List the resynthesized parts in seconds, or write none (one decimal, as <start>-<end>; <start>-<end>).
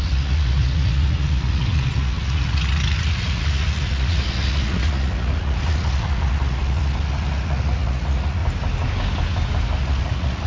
0.0-8.4; 9.8-10.5